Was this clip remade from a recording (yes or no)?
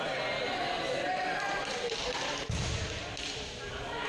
no